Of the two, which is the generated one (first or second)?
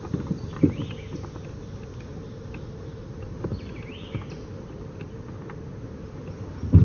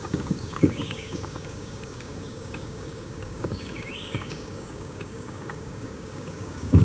second